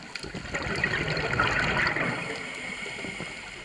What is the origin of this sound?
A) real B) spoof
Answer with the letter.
A